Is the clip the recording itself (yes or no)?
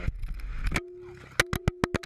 yes